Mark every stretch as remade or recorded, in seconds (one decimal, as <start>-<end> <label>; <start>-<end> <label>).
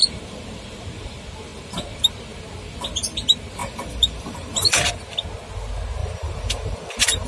0.0-3.6 recorded; 3.6-4.9 remade; 4.9-6.0 recorded; 6.0-7.3 remade